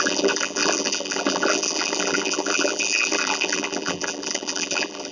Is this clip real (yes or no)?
no